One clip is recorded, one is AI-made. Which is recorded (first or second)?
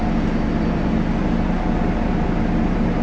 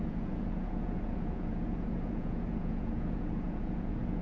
first